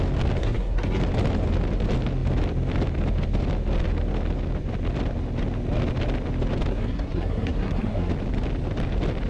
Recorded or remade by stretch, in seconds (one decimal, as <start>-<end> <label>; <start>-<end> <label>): 0.0-0.4 recorded; 0.4-1.0 remade; 1.0-6.7 recorded; 6.7-8.1 remade; 8.1-9.3 recorded